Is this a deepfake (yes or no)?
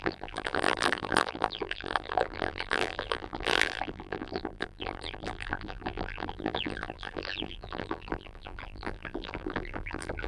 yes